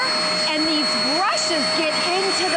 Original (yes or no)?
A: yes